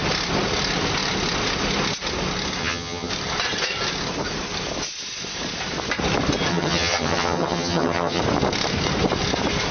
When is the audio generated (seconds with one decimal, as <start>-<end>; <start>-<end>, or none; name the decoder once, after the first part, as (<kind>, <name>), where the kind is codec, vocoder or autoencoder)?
2.6-3.1 (vocoder, HiFi-GAN); 6.5-8.2